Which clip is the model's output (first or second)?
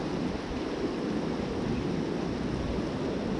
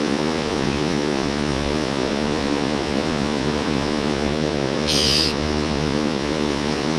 second